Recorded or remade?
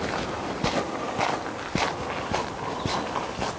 recorded